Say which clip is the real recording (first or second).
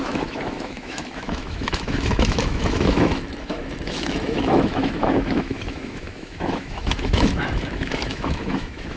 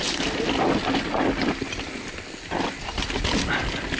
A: second